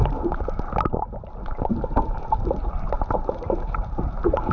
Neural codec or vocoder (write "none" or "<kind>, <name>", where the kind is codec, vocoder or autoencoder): vocoder, BigVGAN v2